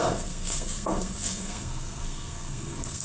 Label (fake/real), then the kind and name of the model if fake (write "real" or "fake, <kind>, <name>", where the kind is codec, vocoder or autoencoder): fake, codec, SNAC